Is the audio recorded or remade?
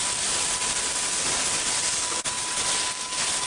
recorded